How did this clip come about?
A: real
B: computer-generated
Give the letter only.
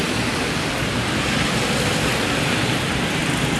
A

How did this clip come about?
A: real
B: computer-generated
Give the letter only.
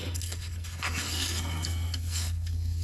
B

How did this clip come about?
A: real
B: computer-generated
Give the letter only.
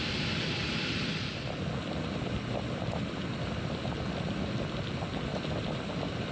A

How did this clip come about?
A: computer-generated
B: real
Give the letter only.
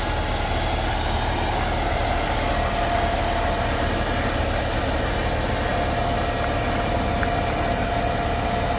B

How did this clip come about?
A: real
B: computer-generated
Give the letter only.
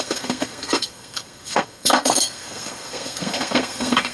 B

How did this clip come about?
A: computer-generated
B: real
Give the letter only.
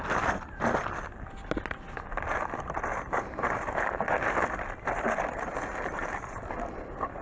B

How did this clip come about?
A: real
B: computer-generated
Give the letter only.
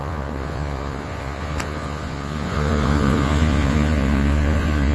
B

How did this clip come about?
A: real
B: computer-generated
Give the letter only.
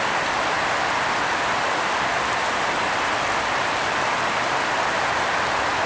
A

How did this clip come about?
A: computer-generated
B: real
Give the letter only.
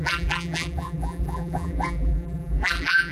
A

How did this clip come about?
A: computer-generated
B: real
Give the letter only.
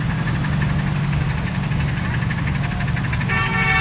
B